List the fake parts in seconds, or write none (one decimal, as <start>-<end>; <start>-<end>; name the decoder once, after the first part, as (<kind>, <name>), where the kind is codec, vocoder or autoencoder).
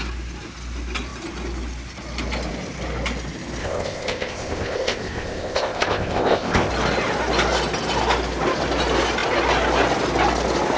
3.6-6.7 (codec, ZipCodec)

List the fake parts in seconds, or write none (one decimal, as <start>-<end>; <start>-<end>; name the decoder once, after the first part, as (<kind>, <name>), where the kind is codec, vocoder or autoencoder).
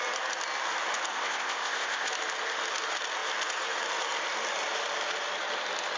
1.1-2.1 (codec, ZipCodec)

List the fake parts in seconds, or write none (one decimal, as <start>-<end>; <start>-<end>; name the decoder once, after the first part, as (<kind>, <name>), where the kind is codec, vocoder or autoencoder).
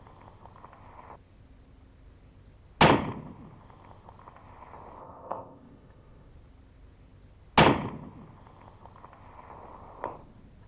5.0-6.3 (codec, ZipCodec)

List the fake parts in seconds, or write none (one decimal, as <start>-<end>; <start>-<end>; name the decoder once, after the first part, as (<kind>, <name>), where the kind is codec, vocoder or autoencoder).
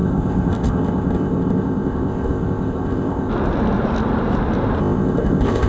0.0-3.3 (codec, ZipCodec); 4.8-5.7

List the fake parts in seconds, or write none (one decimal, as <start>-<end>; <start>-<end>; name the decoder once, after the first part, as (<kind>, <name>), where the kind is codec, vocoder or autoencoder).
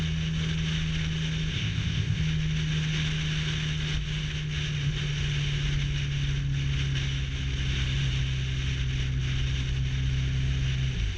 1.5-2.2 (codec, ZipCodec)